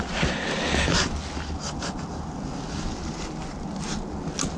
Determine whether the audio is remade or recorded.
recorded